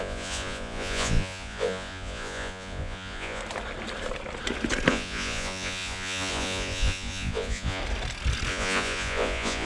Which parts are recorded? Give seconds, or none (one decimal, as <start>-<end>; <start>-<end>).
3.4-4.9; 7.8-8.5